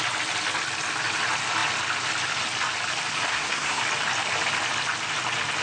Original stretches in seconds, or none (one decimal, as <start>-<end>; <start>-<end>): 0.0-3.3; 3.8-5.6